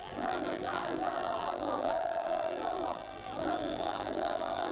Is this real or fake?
fake